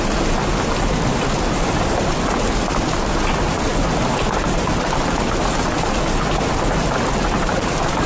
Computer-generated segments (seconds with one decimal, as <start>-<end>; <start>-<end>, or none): none